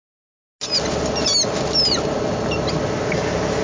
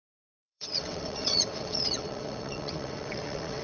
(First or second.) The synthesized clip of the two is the second